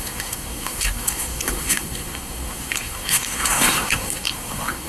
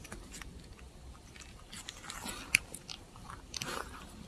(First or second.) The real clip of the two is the second